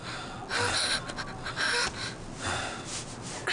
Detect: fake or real real